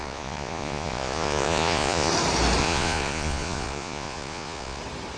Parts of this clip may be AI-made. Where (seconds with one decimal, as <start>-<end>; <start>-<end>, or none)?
0.0-2.1; 2.6-4.8